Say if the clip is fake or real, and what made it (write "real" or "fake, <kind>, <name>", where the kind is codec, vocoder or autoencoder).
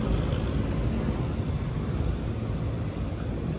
real